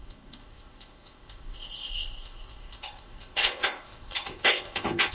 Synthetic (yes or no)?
yes